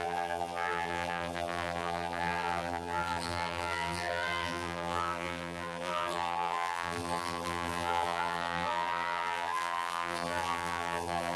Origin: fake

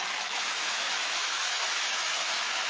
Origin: fake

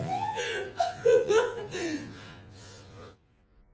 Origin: fake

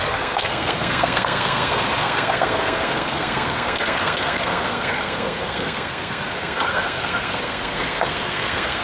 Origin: fake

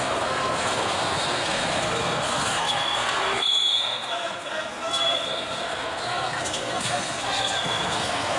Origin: fake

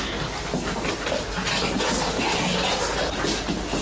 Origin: real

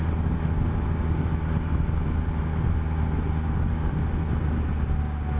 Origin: real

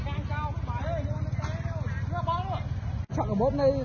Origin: real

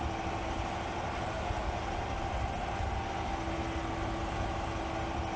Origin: real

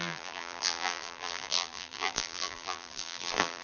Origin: fake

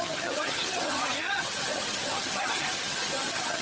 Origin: fake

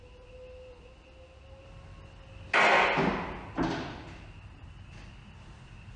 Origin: real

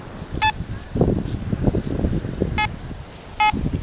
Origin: real